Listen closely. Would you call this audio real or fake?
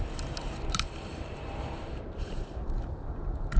fake